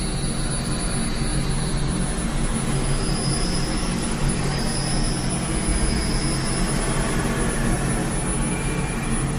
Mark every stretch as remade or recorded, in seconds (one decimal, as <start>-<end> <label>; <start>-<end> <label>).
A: 0.0-3.7 recorded; 3.7-4.6 remade; 4.6-9.4 recorded